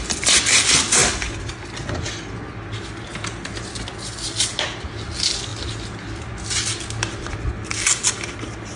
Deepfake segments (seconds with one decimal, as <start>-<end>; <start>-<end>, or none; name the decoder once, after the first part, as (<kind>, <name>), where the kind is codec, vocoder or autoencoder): none